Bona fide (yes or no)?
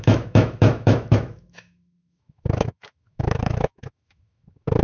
no